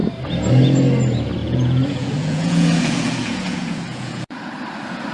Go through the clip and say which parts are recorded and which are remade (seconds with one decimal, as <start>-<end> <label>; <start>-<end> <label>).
0.0-1.4 recorded; 1.4-4.5 remade; 4.5-5.1 recorded